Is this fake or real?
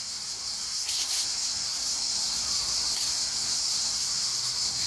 fake